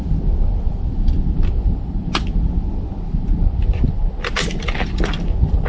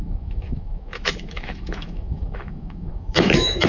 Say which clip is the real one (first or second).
first